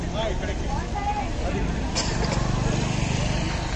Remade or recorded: recorded